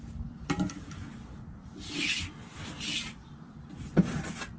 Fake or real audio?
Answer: fake